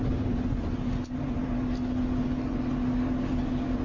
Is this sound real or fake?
real